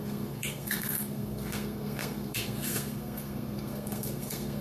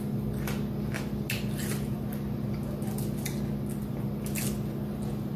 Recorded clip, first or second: second